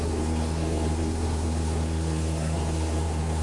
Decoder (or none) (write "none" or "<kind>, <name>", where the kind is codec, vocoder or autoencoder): codec, SNAC